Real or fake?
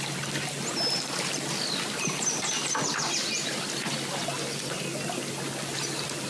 real